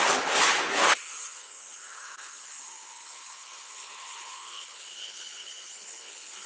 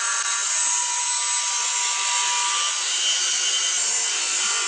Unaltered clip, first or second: second